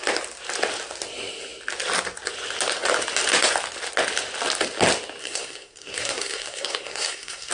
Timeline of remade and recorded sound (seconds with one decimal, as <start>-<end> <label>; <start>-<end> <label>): 0.0-5.2 recorded; 5.2-7.5 remade